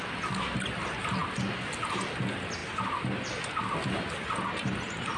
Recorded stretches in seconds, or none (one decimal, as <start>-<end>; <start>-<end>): 0.0-5.2